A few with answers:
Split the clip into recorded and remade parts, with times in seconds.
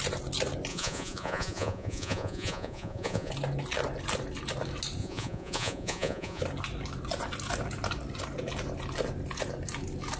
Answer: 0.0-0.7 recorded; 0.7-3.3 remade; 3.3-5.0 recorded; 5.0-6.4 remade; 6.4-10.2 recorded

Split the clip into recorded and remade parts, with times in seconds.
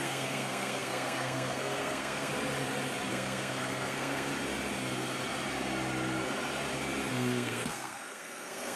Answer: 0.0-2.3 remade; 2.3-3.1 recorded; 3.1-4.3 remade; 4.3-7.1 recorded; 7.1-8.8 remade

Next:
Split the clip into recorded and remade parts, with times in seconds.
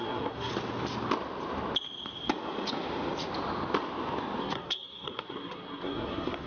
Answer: 0.0-0.5 remade; 0.5-4.4 recorded; 4.4-6.5 remade